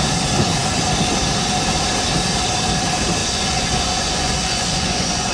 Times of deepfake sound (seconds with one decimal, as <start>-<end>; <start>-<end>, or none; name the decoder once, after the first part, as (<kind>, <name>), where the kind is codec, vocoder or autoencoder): 3.2-5.3 (vocoder, Vocos)